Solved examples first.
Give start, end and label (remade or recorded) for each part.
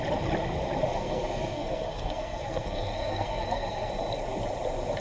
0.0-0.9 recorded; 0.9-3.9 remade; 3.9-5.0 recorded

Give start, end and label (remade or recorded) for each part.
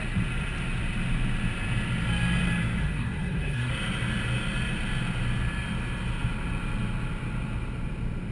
0.0-2.8 recorded; 2.8-3.7 remade; 3.7-8.3 recorded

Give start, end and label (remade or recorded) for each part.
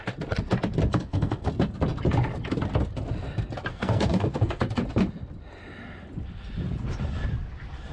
0.0-0.9 recorded; 0.9-1.5 remade; 1.5-3.7 recorded; 3.7-4.6 remade; 4.6-7.9 recorded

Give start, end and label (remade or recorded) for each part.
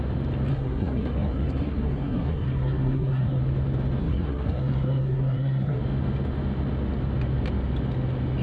0.0-0.5 recorded; 0.5-3.4 remade; 3.4-4.0 recorded; 4.0-5.8 remade; 5.8-8.4 recorded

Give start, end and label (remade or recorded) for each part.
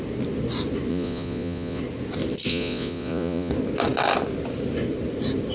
0.0-0.9 recorded; 0.9-1.8 remade; 1.8-2.5 recorded; 2.5-3.5 remade; 3.5-5.5 recorded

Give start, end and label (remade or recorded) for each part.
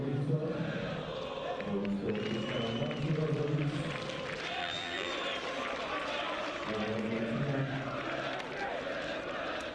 0.0-4.6 recorded; 4.6-5.1 remade; 5.1-9.7 recorded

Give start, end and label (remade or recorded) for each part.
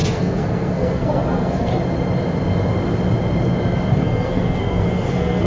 0.0-1.7 remade; 1.7-3.9 recorded; 3.9-5.5 remade